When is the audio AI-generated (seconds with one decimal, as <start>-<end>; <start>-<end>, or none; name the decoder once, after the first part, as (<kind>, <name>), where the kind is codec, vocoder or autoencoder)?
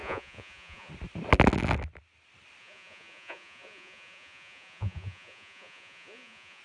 0.0-0.9 (vocoder, Vocos); 2.6-6.6